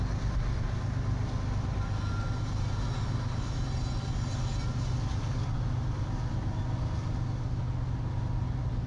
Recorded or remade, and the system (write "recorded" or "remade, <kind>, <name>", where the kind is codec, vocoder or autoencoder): recorded